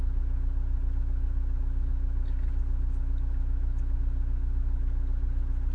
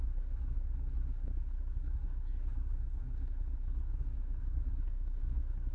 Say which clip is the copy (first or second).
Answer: second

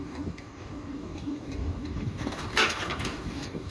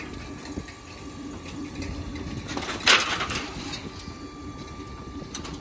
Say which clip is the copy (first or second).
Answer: first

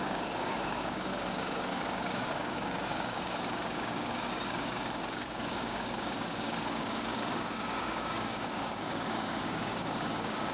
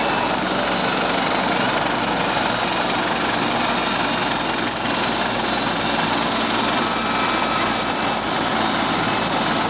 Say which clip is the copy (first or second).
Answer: first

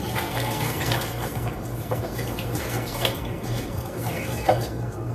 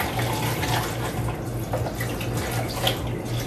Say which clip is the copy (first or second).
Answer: first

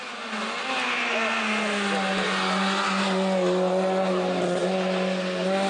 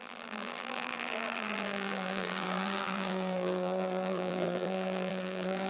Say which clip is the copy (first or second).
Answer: second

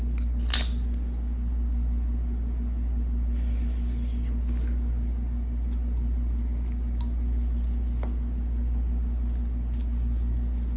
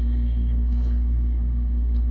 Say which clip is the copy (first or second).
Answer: second